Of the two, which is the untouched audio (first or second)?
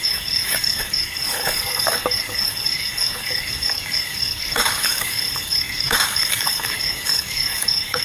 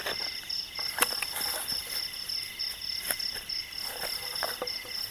second